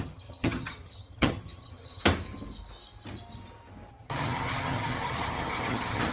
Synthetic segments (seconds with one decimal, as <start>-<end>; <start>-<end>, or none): 0.0-2.0; 3.9-6.1